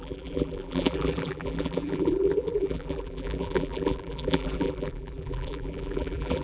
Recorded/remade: remade